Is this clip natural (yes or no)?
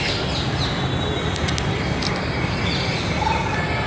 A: yes